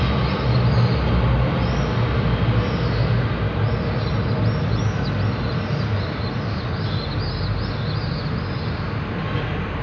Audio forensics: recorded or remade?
recorded